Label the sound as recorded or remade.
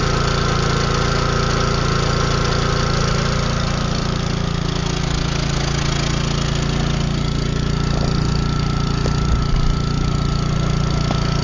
recorded